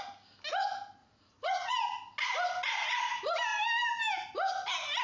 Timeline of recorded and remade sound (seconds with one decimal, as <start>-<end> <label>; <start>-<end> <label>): 0.0-1.0 recorded; 1.0-1.7 remade; 1.7-5.0 recorded